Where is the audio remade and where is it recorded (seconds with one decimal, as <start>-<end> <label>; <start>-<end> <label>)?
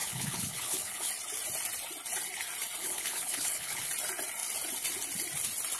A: 0.0-1.1 remade; 1.1-2.8 recorded; 2.8-3.9 remade; 3.9-5.8 recorded